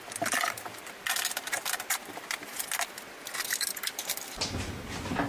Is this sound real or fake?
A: real